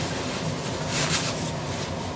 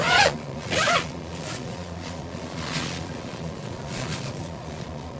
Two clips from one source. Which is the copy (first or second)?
second